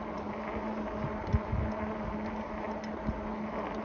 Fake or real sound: real